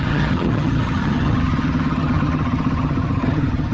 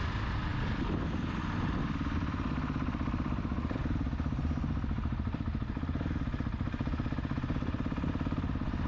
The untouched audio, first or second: second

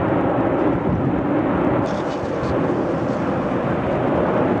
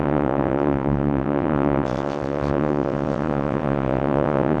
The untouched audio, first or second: first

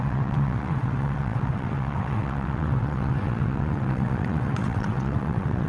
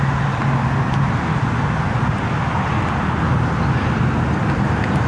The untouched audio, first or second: second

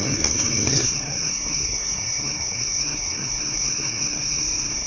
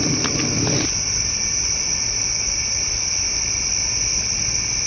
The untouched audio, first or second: second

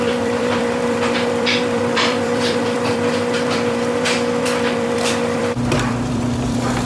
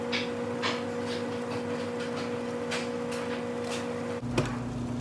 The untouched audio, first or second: second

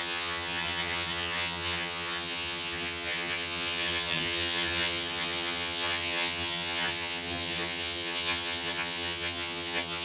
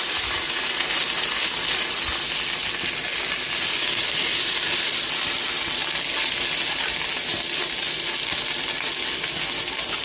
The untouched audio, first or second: second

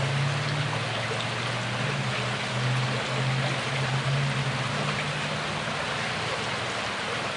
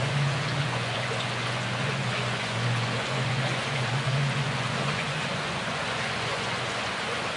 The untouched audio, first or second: first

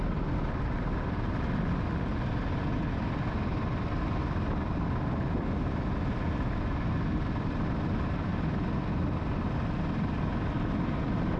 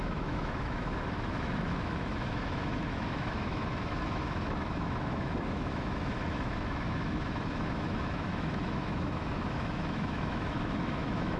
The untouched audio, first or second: first